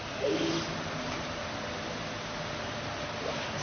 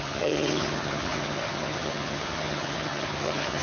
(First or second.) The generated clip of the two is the second